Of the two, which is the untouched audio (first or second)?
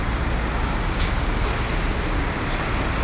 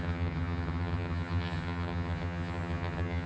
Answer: first